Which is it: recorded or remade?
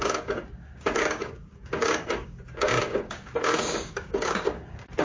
remade